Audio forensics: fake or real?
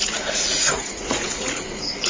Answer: fake